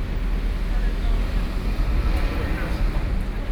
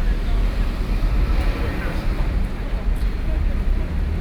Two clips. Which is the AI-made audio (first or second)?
second